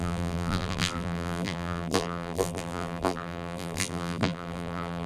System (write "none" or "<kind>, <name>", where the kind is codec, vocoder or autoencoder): vocoder, BigVGAN v2